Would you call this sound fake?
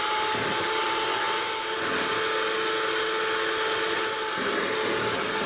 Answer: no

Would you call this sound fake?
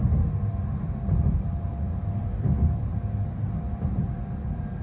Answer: no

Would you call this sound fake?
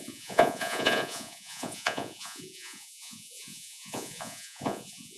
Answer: yes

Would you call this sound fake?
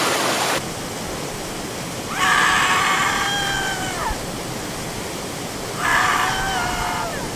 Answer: no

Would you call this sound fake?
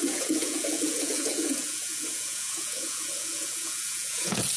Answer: yes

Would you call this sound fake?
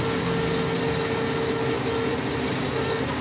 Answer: no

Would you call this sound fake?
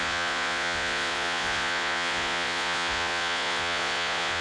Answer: yes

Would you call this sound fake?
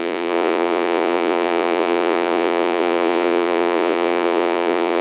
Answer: yes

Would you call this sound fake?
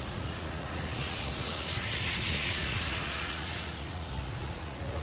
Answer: yes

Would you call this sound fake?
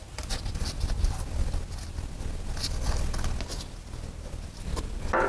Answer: no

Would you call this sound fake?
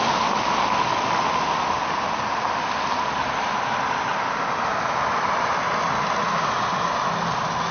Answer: no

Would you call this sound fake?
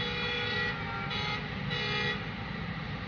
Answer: no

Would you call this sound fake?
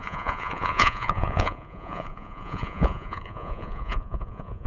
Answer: yes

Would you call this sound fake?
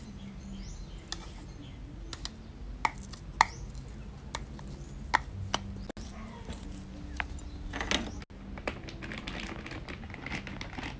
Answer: no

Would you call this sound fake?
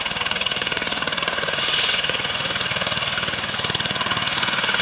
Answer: yes